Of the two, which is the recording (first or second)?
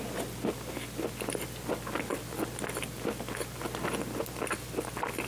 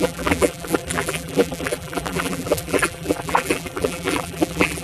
first